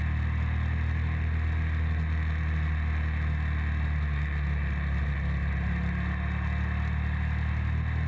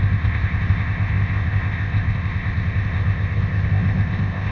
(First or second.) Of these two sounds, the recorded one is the first